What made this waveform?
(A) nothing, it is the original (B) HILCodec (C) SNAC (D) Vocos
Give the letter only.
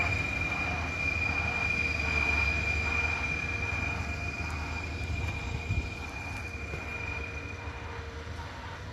A